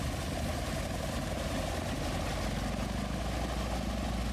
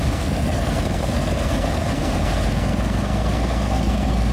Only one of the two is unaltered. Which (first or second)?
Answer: first